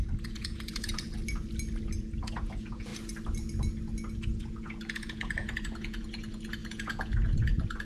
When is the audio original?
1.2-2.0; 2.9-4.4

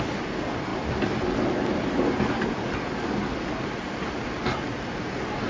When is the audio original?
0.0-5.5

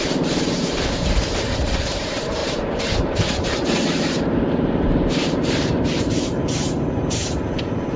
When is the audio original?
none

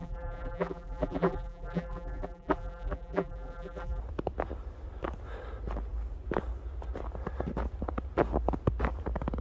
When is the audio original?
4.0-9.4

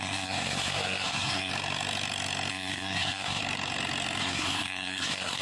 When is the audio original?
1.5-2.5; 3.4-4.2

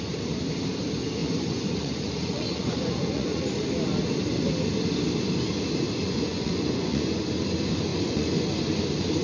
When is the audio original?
0.0-1.2; 3.5-6.0; 7.2-7.9; 8.4-9.2